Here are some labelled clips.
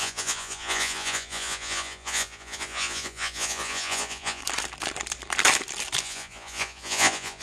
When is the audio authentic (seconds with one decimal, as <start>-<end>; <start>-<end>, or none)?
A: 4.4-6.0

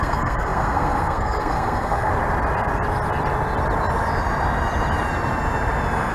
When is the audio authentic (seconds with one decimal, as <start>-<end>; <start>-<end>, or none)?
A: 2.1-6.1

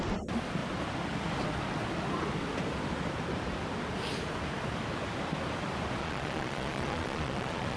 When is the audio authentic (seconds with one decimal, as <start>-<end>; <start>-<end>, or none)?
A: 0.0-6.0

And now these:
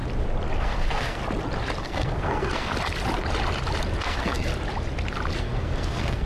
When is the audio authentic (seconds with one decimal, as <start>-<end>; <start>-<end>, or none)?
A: 0.0-0.6; 1.2-1.8; 2.7-4.0; 4.5-5.4

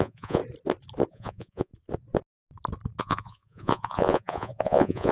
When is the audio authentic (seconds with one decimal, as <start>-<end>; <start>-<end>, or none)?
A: 0.4-1.1; 1.7-3.0

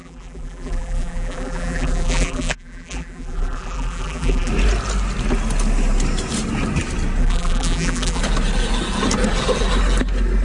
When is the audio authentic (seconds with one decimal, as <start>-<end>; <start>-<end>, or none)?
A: 4.5-7.2; 8.2-10.4

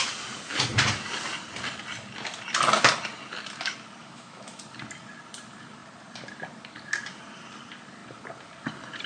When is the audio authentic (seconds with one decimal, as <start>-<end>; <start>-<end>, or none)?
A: 0.0-4.0; 4.6-9.1